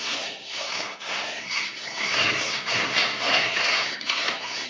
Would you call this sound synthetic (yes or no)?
yes